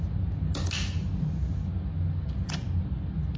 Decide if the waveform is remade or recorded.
recorded